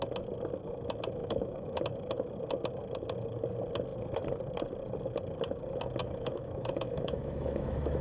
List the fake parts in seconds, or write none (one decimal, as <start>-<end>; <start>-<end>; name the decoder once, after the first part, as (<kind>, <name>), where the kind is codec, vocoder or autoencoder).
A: 1.2-1.8 (autoencoder, DAC-VAE); 6.0-8.0